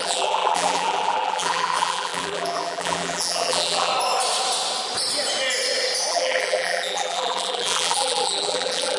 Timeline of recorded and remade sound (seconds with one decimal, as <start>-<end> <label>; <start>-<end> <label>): 0.0-3.9 remade; 3.9-6.1 recorded; 6.1-9.0 remade